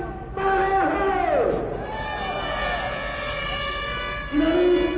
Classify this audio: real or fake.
real